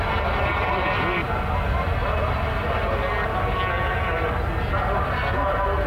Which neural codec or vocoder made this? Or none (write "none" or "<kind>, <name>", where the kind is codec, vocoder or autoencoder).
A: none